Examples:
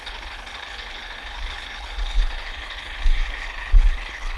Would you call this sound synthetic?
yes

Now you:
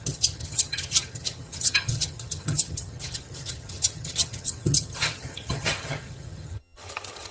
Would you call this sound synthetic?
yes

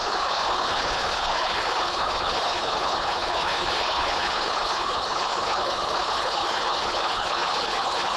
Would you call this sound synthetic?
yes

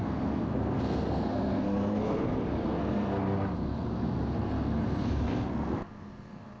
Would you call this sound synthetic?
yes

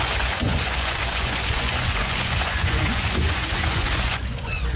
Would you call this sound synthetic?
yes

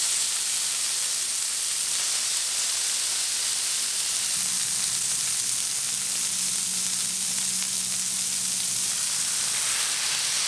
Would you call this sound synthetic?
no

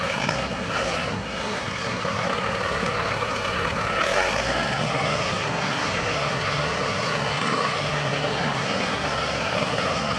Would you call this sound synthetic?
yes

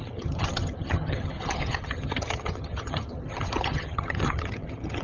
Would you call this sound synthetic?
yes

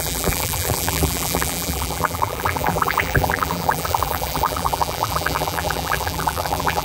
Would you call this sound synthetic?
yes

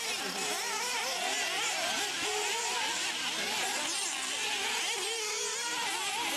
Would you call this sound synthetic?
no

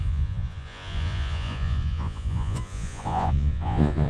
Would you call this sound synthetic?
yes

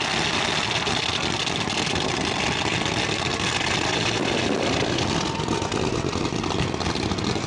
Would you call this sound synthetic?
no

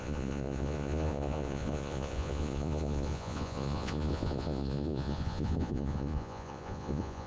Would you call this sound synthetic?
yes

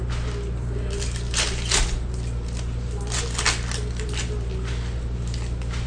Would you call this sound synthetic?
no